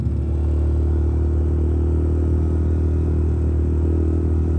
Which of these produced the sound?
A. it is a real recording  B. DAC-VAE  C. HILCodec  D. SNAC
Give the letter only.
A